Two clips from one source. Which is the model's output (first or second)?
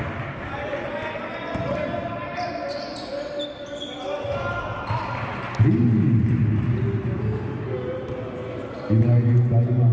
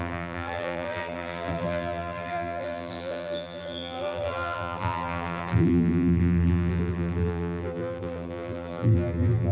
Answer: second